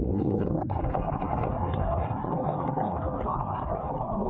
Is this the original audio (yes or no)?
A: no